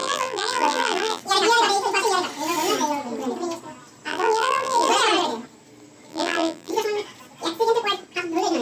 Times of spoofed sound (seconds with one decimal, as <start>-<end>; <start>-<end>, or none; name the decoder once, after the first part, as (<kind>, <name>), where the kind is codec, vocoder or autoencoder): 0.0-1.2 (vocoder, BigVGAN v2); 4.1-4.9; 6.1-6.7